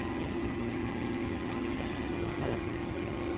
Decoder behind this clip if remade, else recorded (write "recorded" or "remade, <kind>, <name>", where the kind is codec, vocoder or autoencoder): remade, vocoder, HiFi-GAN